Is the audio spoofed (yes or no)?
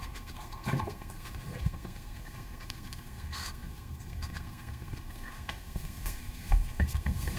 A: yes